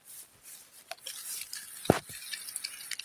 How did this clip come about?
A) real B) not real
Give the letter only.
A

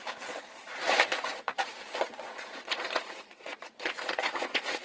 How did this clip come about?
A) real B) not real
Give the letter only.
B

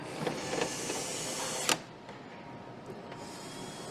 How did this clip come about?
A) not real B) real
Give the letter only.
B